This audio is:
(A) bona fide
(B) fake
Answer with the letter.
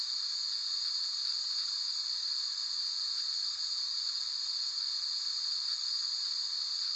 A